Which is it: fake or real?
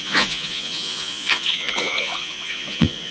fake